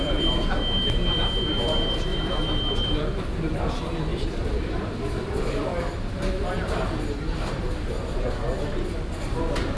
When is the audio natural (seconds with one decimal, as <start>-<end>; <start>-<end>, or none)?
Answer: 0.0-2.1; 3.5-4.1; 6.3-9.8